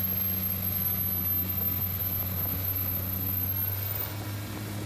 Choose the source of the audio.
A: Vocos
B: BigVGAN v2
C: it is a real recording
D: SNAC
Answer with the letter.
C